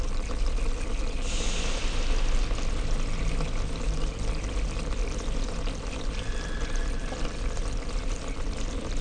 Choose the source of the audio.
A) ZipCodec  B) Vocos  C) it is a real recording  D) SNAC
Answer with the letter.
C